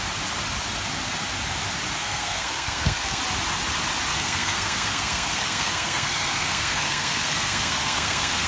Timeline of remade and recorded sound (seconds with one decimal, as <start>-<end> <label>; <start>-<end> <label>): 0.0-2.0 recorded; 2.0-3.2 remade; 3.2-4.1 recorded; 4.1-8.5 remade